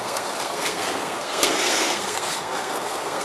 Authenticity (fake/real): fake